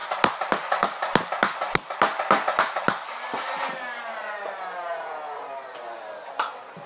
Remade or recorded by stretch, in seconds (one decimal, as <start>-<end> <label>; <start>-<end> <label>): 0.0-6.9 recorded

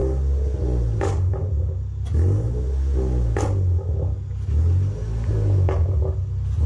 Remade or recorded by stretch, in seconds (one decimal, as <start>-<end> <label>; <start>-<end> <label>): 0.0-6.7 recorded

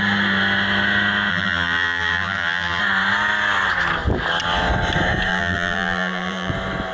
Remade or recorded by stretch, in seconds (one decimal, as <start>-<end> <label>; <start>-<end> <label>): 0.0-1.3 recorded; 1.3-2.8 remade; 2.8-5.3 recorded; 5.3-6.5 remade; 6.5-6.9 recorded

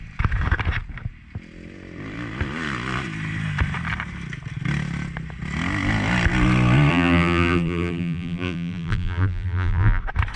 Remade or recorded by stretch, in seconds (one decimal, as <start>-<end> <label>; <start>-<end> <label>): 0.0-6.9 recorded; 6.9-10.0 remade; 10.0-10.4 recorded

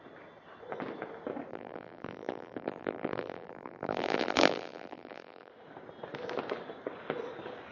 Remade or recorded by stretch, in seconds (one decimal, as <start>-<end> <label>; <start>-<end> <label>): 0.0-1.5 recorded; 1.5-5.5 remade; 5.5-7.7 recorded

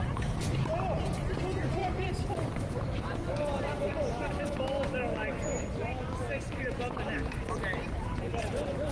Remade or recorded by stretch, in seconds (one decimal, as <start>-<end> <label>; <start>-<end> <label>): 0.0-1.8 recorded; 1.8-3.4 remade; 3.4-8.9 recorded

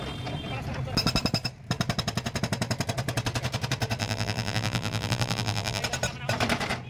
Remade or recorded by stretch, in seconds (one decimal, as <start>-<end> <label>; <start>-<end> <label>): 0.0-4.0 recorded; 4.0-5.8 remade; 5.8-6.9 recorded

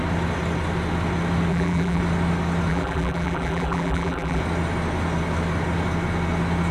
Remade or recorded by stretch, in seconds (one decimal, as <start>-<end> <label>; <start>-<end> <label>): 0.0-1.5 recorded; 1.5-2.0 remade; 2.0-2.7 recorded; 2.7-4.4 remade; 4.4-6.7 recorded